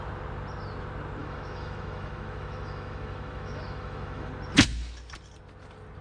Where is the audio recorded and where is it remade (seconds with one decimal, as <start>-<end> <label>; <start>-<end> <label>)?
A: 0.0-1.2 recorded; 1.2-4.3 remade; 4.3-6.0 recorded